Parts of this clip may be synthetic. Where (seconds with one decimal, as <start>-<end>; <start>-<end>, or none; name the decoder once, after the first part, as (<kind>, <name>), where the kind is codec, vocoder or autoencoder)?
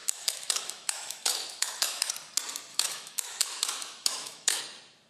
0.0-2.1 (autoencoder, DAC-VAE); 2.7-4.6